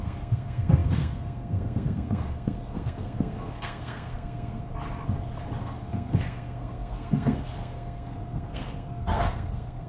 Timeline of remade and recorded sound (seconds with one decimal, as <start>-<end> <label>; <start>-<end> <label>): 0.0-4.7 remade; 4.7-5.6 recorded; 5.6-9.9 remade